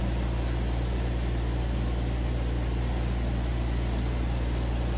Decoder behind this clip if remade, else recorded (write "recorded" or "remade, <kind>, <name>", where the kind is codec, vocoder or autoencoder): recorded